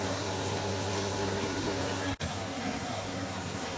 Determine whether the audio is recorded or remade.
remade